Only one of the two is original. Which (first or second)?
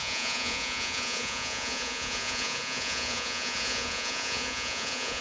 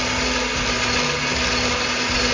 second